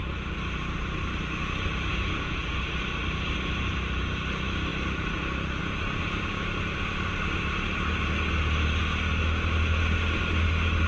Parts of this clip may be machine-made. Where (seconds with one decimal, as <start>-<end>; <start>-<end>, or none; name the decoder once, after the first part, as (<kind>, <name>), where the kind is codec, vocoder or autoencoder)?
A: 1.9-2.5 (vocoder, Vocos)